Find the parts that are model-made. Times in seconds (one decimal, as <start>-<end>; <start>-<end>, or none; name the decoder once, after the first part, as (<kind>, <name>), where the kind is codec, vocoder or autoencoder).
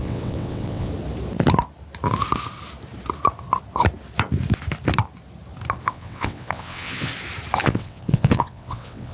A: 0.0-0.9 (vocoder, WaveNeXt); 5.8-7.1; 7.6-9.1